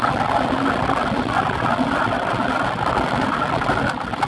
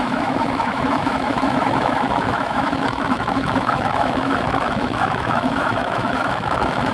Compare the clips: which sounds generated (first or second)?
second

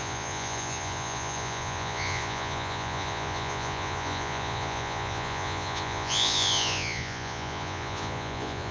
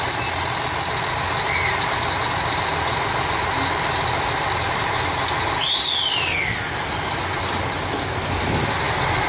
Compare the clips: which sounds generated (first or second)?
first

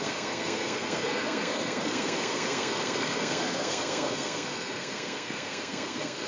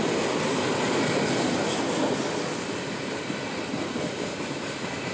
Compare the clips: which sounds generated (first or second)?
first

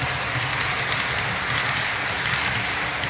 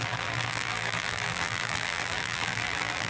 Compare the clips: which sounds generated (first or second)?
second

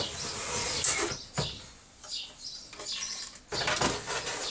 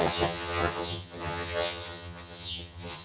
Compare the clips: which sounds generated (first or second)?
second